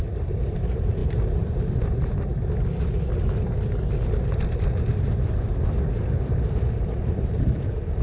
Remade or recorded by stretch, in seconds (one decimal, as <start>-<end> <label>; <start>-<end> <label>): 0.0-2.3 remade; 2.3-6.9 recorded; 6.9-8.0 remade